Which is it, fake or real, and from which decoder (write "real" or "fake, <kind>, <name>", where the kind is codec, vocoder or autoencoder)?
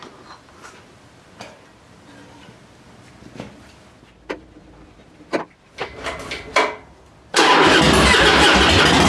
real